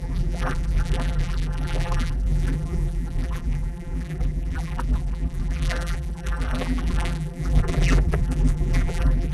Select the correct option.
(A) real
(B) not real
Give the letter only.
B